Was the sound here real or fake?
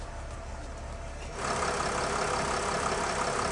real